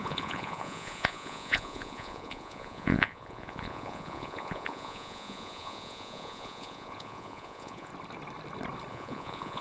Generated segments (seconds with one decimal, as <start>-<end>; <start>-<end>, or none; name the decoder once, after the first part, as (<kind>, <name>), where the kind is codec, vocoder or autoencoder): 0.0-7.9 (vocoder, Vocos); 8.9-9.6